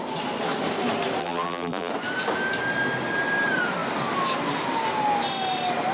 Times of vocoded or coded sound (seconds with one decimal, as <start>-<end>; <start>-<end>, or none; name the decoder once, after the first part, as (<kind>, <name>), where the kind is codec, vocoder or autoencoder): 1.2-1.9 (vocoder, BigVGAN v2)